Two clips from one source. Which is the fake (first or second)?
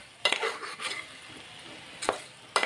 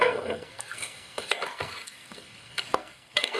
second